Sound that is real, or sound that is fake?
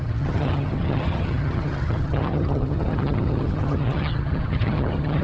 fake